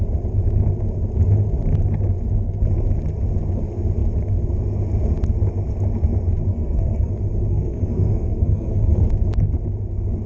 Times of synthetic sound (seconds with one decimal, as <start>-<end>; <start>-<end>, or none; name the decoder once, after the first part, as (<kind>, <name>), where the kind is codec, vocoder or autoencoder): 6.5-7.1 (codec, SNAC); 7.5-9.1